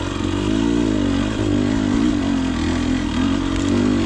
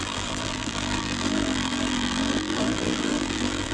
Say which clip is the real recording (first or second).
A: first